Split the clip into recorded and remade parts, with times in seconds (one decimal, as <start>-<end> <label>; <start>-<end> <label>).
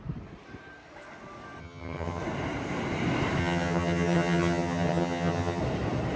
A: 0.0-1.6 recorded; 1.6-2.2 remade; 2.2-3.4 recorded; 3.4-5.6 remade; 5.6-6.2 recorded